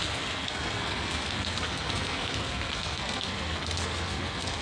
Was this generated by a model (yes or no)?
yes